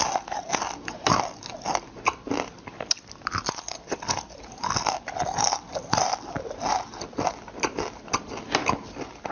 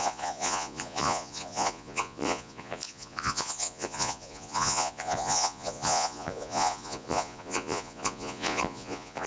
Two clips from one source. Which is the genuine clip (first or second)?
first